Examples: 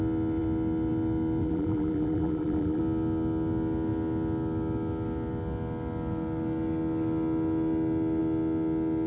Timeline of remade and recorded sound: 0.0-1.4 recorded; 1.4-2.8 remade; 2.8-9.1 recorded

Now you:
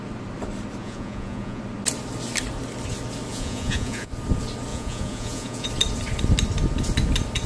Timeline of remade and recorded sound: 0.0-0.8 recorded; 0.8-1.6 remade; 1.6-3.3 recorded; 3.3-4.1 remade; 4.1-4.7 recorded; 4.7-5.7 remade; 5.7-7.5 recorded

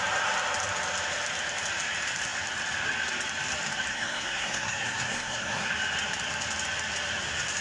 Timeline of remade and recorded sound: 0.0-3.9 recorded; 3.9-5.7 remade; 5.7-7.6 recorded

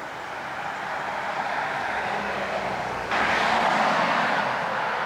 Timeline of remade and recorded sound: 0.0-1.3 recorded; 1.3-4.4 remade; 4.4-5.1 recorded

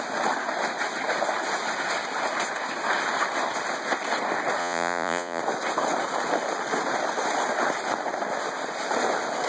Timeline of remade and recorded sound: 0.0-4.6 recorded; 4.6-5.4 remade; 5.4-9.5 recorded

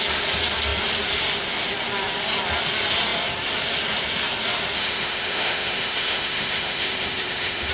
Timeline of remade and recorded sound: 0.0-4.8 recorded; 4.8-7.7 remade